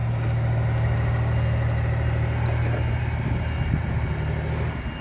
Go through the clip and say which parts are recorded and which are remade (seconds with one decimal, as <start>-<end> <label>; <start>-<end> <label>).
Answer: 0.0-5.0 recorded